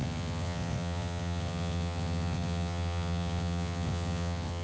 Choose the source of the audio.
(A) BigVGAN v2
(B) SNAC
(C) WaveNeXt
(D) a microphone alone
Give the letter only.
C